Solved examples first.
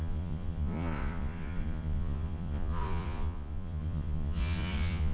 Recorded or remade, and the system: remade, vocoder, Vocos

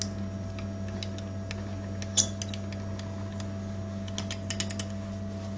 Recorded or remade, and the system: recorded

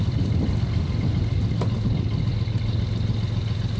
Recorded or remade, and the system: recorded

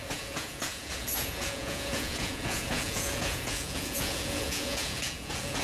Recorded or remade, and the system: remade, vocoder, Vocos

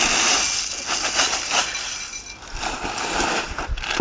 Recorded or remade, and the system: recorded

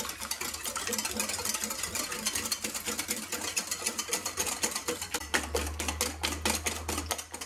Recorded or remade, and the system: recorded